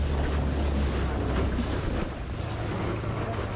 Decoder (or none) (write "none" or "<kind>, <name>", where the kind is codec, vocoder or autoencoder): none